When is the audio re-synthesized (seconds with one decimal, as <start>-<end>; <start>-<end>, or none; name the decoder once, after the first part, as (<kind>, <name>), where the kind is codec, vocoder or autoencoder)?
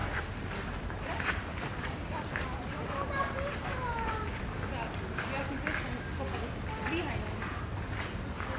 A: 0.0-4.4 (vocoder, BigVGAN v2)